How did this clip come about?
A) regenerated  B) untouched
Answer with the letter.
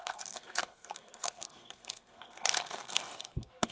A